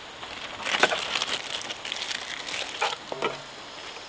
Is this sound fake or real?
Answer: real